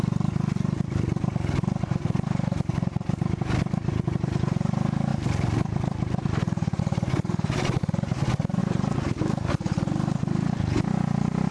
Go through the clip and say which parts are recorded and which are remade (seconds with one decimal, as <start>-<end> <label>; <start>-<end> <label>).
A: 0.0-11.5 recorded